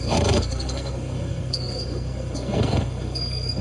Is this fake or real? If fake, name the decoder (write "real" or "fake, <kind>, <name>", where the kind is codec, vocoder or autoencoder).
fake, codec, SNAC